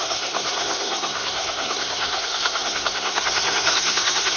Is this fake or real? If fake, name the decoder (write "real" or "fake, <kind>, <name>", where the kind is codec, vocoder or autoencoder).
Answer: fake, codec, SNAC